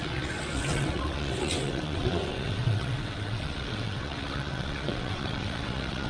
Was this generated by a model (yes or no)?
yes